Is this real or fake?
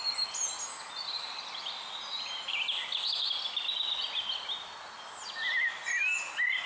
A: real